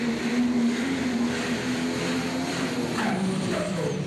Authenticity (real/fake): fake